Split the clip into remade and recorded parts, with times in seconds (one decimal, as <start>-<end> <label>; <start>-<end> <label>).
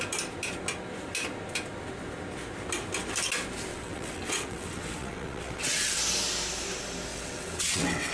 0.0-3.7 recorded; 3.7-6.0 remade; 6.0-7.1 recorded; 7.1-8.1 remade